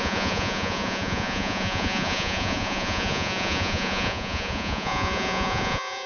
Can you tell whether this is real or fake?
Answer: fake